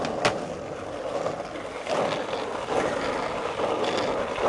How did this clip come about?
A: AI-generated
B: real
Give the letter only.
B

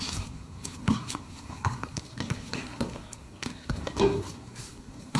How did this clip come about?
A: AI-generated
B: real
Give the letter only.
A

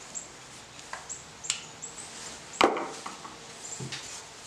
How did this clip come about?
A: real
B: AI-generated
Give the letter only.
A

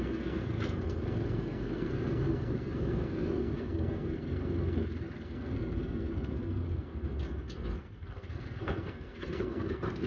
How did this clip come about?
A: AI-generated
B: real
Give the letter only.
A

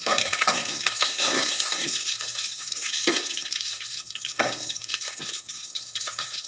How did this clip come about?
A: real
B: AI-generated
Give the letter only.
B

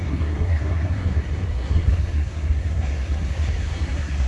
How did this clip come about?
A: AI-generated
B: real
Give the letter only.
A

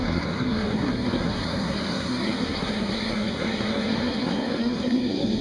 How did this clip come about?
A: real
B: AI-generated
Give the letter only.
B